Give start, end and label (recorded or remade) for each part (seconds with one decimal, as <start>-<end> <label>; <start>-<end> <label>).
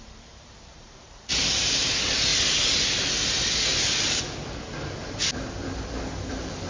0.0-2.3 remade; 2.3-6.3 recorded; 6.3-6.7 remade